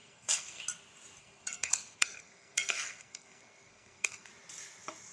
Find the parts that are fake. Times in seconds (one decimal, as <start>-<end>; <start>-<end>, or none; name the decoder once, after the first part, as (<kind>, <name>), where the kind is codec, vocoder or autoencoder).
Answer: 0.0-0.6 (codec, SNAC); 1.2-4.3